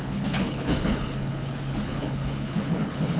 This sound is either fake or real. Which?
fake